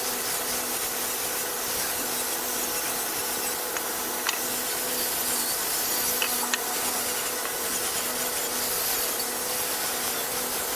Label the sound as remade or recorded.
recorded